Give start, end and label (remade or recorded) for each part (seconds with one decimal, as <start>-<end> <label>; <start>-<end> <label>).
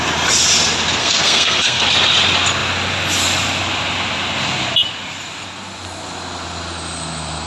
0.0-1.0 recorded; 1.0-1.8 remade; 1.8-7.5 recorded